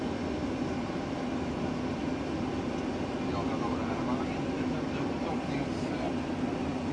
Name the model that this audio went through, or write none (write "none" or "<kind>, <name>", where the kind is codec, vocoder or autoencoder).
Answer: none